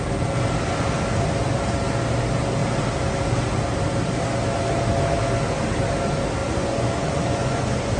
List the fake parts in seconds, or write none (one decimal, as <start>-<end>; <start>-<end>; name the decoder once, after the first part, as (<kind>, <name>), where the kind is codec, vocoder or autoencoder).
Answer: 6.4-8.0 (vocoder, Vocos)